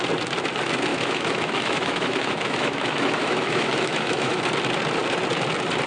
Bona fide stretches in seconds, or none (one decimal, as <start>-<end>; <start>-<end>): 0.0-0.9; 4.4-5.9